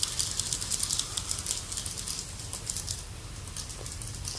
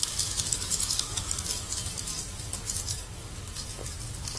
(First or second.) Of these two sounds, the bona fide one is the first